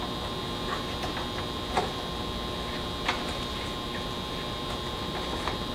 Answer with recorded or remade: recorded